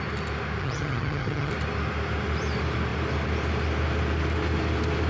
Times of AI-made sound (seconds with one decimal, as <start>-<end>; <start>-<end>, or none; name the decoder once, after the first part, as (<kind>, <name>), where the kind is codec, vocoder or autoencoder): 0.6-1.5 (vocoder, HiFi-GAN)